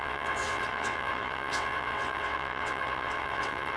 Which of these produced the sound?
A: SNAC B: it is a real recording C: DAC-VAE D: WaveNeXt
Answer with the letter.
D